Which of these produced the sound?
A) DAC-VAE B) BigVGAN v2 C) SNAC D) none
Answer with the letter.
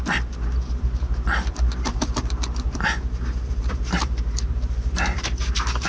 B